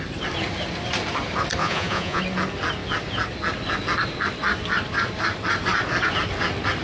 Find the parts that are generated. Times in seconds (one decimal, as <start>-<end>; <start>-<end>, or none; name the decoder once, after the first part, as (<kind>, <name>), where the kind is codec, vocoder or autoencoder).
1.6-2.2 (vocoder, Vocos)

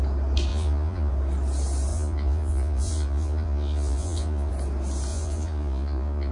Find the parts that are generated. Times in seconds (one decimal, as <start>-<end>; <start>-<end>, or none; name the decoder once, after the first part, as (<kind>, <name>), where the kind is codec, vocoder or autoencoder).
0.5-1.1 (vocoder, Vocos); 1.9-4.5; 5.1-6.3

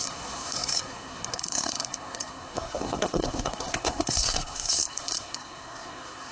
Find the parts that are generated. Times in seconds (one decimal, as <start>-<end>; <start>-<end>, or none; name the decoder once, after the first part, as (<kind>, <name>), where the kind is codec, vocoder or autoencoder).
0.0-6.3 (codec, SNAC)

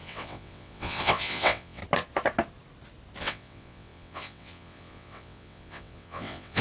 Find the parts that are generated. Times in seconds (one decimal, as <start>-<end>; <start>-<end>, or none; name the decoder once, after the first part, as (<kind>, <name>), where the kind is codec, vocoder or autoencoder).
0.0-1.8 (vocoder, WaveNeXt); 3.2-6.6